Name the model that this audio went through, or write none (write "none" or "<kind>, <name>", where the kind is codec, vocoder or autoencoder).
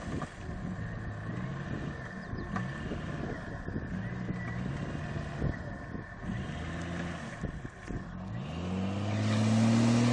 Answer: none